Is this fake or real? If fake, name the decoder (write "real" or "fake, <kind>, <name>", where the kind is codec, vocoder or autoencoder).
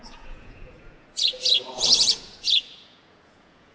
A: fake, vocoder, Vocos